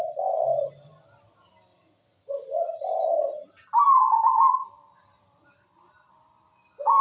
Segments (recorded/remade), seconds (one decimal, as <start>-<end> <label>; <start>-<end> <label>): 0.0-7.0 recorded